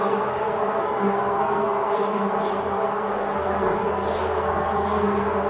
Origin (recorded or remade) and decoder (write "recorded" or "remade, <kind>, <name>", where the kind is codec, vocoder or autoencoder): remade, codec, SNAC